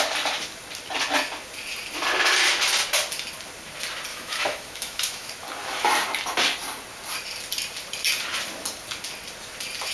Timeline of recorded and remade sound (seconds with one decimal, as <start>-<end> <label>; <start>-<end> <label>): 0.0-4.1 recorded; 4.1-5.3 remade; 5.3-9.9 recorded